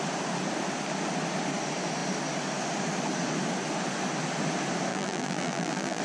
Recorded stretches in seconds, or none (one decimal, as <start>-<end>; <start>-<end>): 0.0-4.9